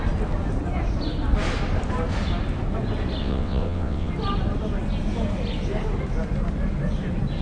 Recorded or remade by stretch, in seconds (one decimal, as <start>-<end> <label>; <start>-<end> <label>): 0.0-3.2 recorded; 3.2-4.1 remade; 4.1-7.4 recorded